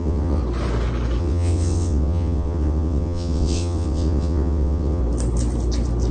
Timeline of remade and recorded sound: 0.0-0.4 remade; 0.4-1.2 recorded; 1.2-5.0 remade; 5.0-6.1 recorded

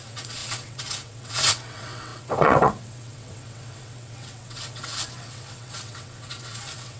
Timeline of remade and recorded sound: 0.0-7.0 remade

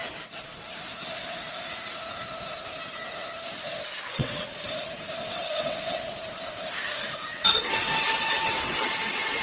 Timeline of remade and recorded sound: 0.0-4.1 recorded; 4.1-4.7 remade; 4.7-5.3 recorded; 5.3-6.1 remade; 6.1-7.3 recorded; 7.3-9.4 remade

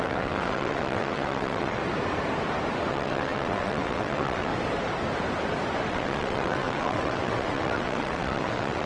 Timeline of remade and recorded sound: 0.0-1.8 remade; 1.8-2.9 recorded; 2.9-4.5 remade; 4.5-5.9 recorded; 5.9-8.9 remade

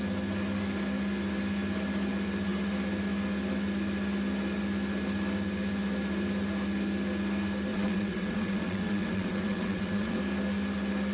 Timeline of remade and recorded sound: 0.0-7.7 recorded; 7.7-10.2 remade; 10.2-11.1 recorded

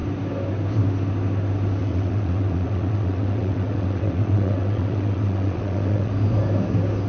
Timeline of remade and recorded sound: 0.0-1.8 recorded; 1.8-6.1 remade; 6.1-7.1 recorded

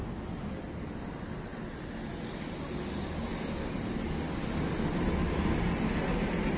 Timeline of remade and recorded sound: 0.0-6.6 recorded